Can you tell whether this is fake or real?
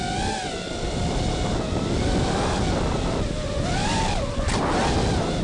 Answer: real